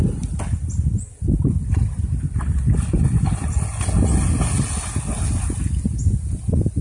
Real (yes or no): yes